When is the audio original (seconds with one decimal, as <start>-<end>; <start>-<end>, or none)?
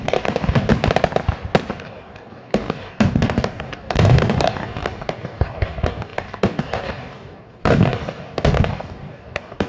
0.7-1.7